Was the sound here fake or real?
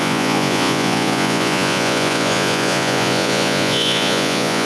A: fake